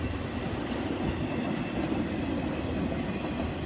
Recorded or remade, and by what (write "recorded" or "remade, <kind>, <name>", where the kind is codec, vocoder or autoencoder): recorded